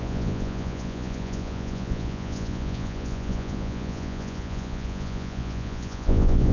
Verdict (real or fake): fake